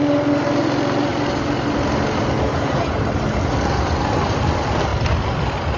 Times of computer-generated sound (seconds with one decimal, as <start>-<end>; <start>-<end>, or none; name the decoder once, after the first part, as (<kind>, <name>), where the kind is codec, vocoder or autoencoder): 2.5-3.0 (vocoder, Vocos)